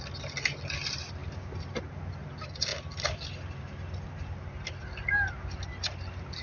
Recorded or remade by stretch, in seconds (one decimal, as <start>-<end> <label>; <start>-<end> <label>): 0.0-6.4 recorded